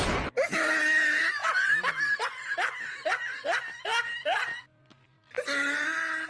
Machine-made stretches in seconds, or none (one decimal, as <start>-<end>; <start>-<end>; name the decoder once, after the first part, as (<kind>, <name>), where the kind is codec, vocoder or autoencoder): 1.4-2.5 (vocoder, BigVGAN v2)